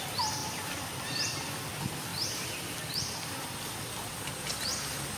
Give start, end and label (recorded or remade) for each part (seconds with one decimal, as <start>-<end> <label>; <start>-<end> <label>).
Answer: 0.0-0.4 recorded; 0.4-1.3 remade; 1.3-5.2 recorded